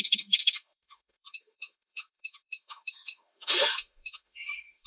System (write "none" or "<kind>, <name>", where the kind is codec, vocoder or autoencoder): autoencoder, DAC-VAE